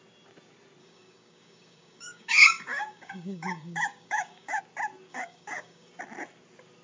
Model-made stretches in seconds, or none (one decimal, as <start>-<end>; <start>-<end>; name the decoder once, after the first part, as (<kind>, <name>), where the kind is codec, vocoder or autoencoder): 0.8-4.6 (codec, DAC); 5.1-5.9